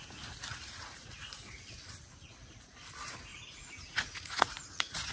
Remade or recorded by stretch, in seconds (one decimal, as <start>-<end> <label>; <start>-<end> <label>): 0.0-0.5 recorded; 0.5-1.6 remade; 1.6-3.3 recorded; 3.3-5.1 remade